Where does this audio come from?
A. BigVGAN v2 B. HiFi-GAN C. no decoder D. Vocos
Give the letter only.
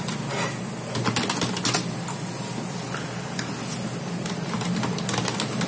C